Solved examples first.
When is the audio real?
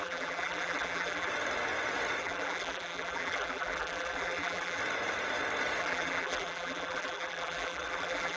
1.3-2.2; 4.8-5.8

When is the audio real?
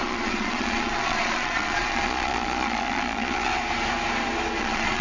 3.5-4.6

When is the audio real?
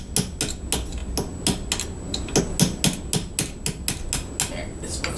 0.0-5.2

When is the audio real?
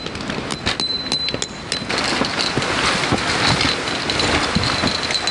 0.0-5.3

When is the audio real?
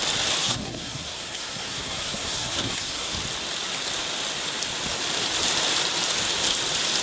0.0-0.4; 3.1-7.0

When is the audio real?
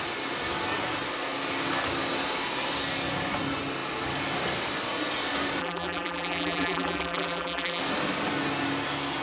0.0-5.6; 7.8-9.2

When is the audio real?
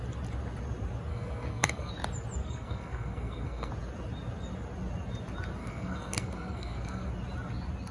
0.0-1.1; 1.9-2.4; 3.7-5.6; 7.1-7.9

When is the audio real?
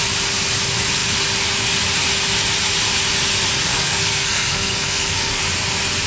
0.0-3.7; 5.4-6.1